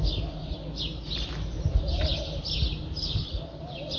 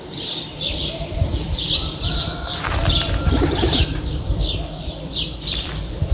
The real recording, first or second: first